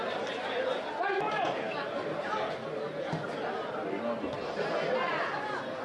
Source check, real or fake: real